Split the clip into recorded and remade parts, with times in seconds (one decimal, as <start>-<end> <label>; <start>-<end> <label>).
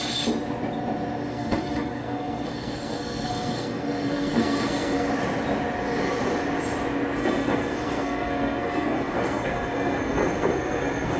0.0-1.3 recorded; 1.3-5.1 remade; 5.1-7.2 recorded; 7.2-11.2 remade